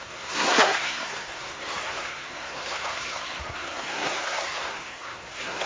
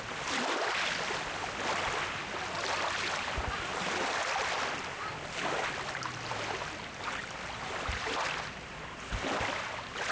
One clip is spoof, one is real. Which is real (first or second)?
second